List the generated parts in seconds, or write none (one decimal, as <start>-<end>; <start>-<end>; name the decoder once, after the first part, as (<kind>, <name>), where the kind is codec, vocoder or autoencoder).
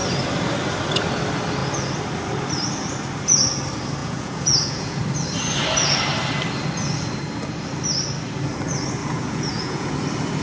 4.0-5.0 (vocoder, Vocos); 9.0-9.9